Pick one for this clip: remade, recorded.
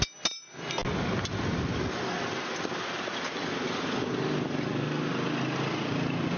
recorded